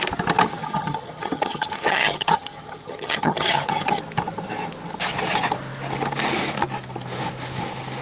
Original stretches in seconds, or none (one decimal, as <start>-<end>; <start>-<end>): 0.0-0.6; 4.0-8.0

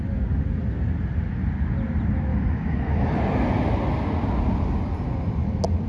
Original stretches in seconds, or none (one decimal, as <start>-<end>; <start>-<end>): 0.0-2.3; 3.2-5.9

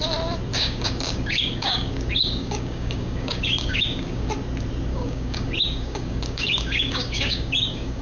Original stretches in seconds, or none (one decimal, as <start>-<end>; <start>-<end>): 0.0-0.5; 4.3-4.9

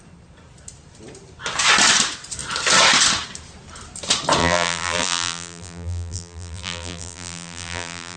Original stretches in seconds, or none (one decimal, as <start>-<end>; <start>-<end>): 0.0-4.4

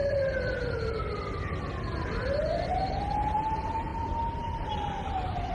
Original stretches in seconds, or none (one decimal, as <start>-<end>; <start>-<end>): 0.0-2.5; 3.4-3.9; 4.4-5.5

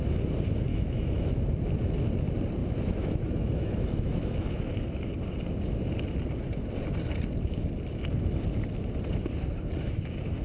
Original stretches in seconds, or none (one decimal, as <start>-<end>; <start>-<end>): 0.0-0.7; 1.3-2.6; 4.7-10.4